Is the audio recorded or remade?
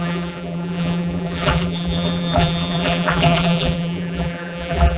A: remade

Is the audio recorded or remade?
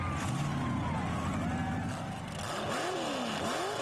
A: recorded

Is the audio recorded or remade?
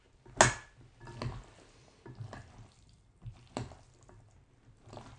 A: recorded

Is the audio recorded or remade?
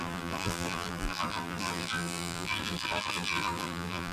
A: remade